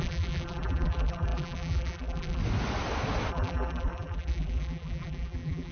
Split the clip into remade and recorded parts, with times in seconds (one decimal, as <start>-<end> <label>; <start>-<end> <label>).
0.0-2.4 remade; 2.4-3.3 recorded; 3.3-5.7 remade